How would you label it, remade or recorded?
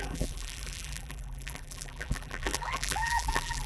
remade